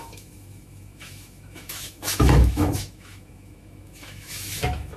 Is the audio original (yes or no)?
no